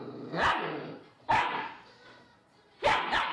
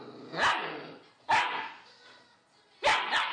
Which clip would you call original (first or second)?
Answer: second